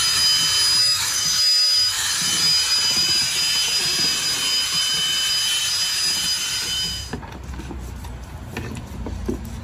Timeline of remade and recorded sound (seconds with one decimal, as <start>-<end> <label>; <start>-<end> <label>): 0.0-0.8 recorded; 0.8-2.2 remade; 2.2-9.6 recorded